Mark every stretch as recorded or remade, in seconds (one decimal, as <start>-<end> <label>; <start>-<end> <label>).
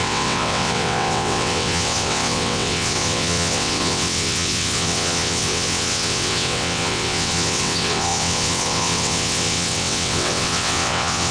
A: 0.0-11.3 remade